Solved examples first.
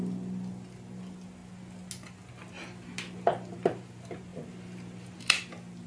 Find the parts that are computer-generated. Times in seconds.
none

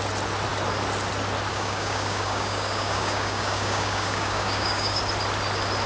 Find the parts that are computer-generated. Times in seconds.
1.5-5.0 (codec, DAC)

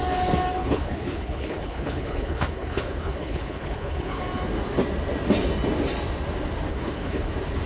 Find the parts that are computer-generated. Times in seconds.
0.6-4.2 (codec, HILCodec); 6.7-7.3

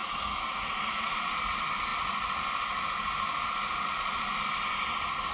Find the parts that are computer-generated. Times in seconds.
0.0-1.1 (autoencoder, DAC-VAE)

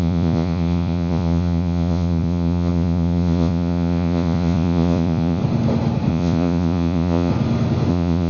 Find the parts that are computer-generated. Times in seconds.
0.0-5.4 (vocoder, Vocos); 6.1-7.3; 7.9-8.3

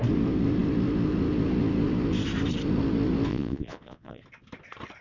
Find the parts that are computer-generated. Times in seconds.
3.3-4.2 (vocoder, Vocos)